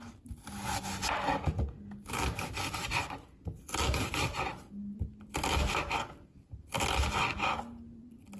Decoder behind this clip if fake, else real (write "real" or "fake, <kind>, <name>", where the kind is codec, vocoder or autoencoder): real